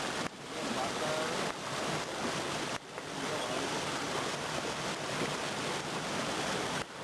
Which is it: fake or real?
real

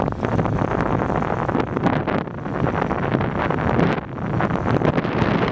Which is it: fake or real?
real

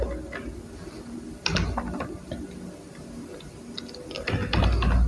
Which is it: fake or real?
real